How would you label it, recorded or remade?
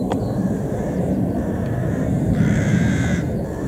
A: remade